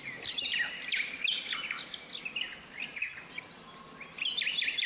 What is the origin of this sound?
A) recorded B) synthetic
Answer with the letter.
A